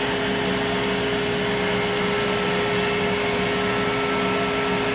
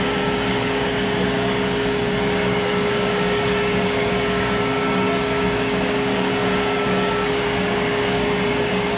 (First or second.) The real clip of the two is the first